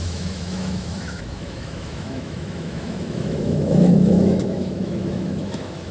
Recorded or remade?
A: remade